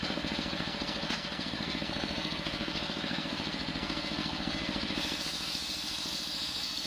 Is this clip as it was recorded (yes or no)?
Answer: no